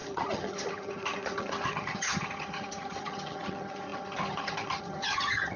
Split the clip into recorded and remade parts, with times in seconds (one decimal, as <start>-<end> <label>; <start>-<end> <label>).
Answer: 0.0-5.6 remade